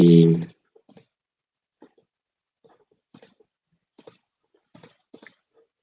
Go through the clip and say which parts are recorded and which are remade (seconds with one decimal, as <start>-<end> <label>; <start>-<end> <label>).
0.0-5.8 recorded